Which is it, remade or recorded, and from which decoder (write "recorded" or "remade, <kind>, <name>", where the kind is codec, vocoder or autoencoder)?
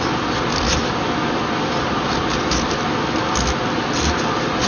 recorded